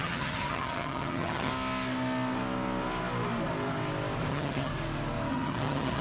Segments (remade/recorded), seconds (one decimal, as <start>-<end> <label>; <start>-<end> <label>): 0.0-1.5 remade; 1.5-4.3 recorded; 4.3-4.7 remade; 4.7-5.3 recorded; 5.3-6.0 remade